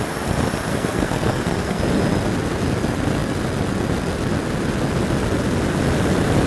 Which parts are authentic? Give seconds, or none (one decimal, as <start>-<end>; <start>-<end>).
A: 0.0-0.7; 1.8-6.5